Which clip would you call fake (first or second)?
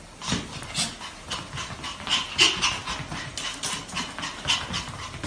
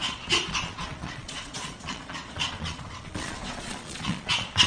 second